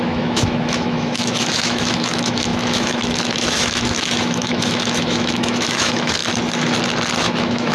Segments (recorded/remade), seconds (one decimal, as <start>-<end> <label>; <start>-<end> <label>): 0.0-6.2 remade; 6.2-7.2 recorded; 7.2-7.7 remade